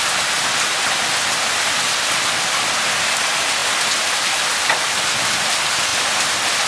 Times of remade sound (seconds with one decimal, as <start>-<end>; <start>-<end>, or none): none

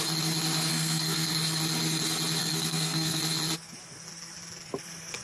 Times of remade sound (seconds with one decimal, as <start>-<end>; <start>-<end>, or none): 0.7-1.3; 2.4-3.2

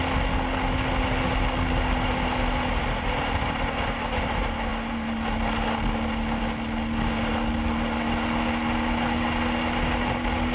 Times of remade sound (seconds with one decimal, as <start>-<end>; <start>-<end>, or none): none

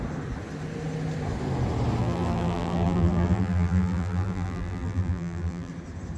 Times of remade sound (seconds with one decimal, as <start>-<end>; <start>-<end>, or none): 2.0-5.7

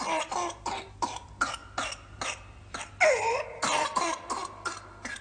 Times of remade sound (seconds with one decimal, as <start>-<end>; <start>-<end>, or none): 0.0-1.6; 3.3-4.4